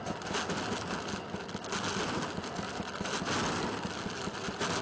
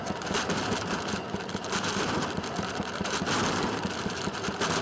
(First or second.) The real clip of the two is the first